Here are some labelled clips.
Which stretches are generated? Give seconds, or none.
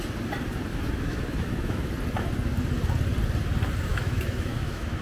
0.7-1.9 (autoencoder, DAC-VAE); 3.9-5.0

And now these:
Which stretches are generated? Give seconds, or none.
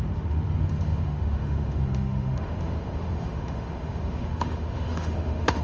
0.0-5.6 (autoencoder, DAC-VAE)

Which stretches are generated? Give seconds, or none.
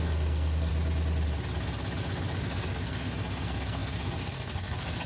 0.0-0.7 (codec, SNAC); 2.4-5.1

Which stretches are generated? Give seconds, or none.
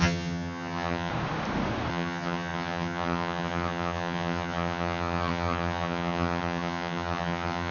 0.0-1.1 (vocoder, HiFi-GAN); 1.9-7.7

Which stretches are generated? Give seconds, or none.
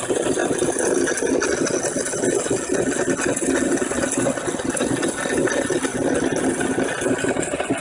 none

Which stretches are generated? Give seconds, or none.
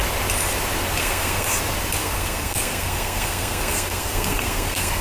1.0-1.6 (codec, SNAC); 2.0-5.0